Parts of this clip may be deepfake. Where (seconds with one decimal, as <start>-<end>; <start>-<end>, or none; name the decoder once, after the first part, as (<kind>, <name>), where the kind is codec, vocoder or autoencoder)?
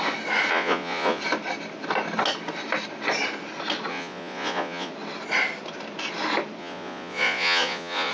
0.5-1.2 (vocoder, Vocos); 3.9-4.9; 6.6-8.1